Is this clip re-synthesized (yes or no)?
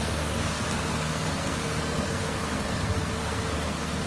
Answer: yes